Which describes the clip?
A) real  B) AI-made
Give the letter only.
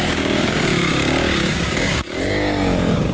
B